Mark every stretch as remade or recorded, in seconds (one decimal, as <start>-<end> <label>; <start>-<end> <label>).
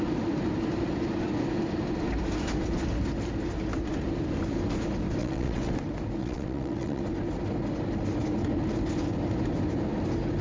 0.0-5.2 recorded; 5.2-5.7 remade; 5.7-6.2 recorded; 6.2-7.0 remade; 7.0-10.4 recorded